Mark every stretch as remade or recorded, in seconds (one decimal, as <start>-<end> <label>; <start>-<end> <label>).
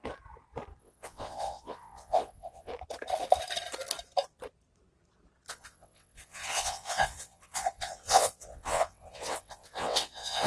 0.0-0.8 recorded; 0.8-2.7 remade; 2.7-5.5 recorded; 5.5-10.5 remade